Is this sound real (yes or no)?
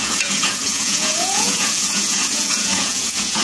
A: no